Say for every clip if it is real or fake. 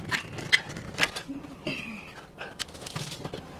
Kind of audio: fake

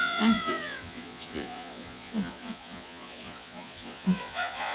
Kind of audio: fake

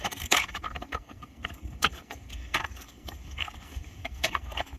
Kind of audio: fake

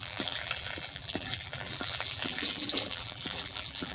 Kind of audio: fake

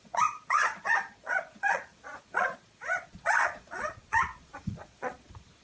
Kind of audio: fake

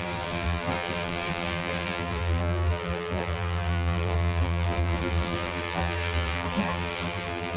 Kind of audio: fake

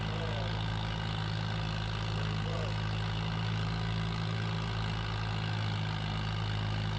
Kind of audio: real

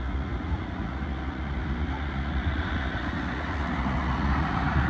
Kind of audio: fake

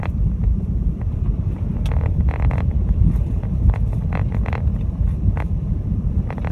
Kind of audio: fake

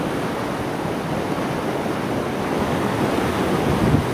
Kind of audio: real